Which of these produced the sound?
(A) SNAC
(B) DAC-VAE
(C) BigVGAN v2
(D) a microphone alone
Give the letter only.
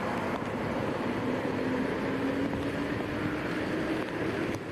D